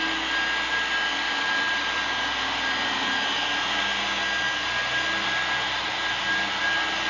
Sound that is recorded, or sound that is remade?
recorded